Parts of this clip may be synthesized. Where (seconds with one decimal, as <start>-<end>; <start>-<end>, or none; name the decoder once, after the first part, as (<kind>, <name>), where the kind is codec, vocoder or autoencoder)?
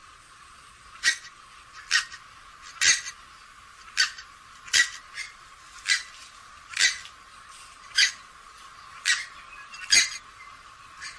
0.0-1.8 (vocoder, Vocos); 7.3-8.1